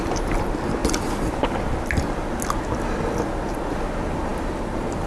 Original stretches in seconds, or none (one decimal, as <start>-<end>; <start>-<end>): 0.0-5.1